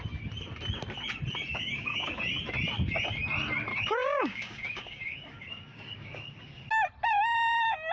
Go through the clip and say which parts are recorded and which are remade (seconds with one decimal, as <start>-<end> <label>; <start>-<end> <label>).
0.0-1.5 recorded; 1.5-2.2 remade; 2.2-3.7 recorded; 3.7-6.6 remade; 6.6-7.9 recorded